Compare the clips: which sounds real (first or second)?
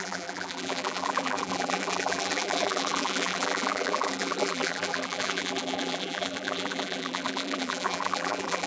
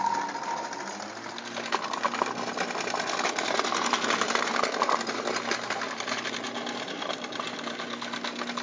second